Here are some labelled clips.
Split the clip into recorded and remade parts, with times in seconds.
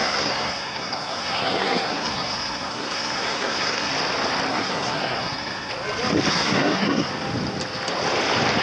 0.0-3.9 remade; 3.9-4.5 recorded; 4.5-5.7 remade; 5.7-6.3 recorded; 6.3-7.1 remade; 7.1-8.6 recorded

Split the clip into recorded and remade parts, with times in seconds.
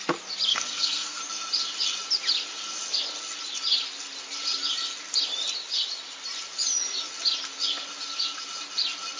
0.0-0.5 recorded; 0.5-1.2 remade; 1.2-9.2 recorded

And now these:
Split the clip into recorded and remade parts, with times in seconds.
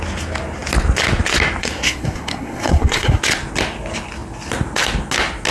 0.0-1.6 recorded; 1.6-3.2 remade; 3.2-5.5 recorded